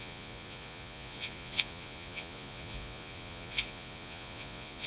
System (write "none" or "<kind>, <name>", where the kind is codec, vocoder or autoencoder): vocoder, Vocos